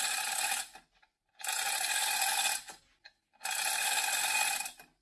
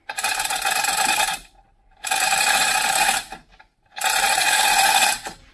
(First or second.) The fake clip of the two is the second